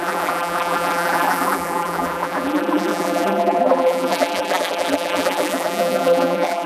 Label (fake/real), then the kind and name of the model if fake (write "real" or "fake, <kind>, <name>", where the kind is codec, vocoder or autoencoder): fake, vocoder, BigVGAN v2